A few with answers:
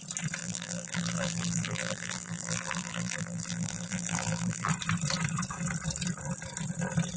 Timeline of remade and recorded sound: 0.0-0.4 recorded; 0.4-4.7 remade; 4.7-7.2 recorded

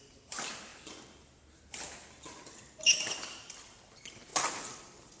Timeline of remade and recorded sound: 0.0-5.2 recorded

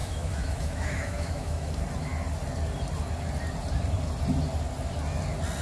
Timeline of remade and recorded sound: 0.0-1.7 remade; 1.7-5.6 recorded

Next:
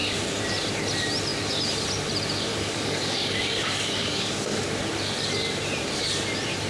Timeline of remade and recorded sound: 0.0-2.5 recorded; 2.5-4.6 remade; 4.6-6.7 recorded